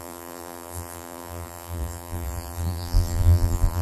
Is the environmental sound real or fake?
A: fake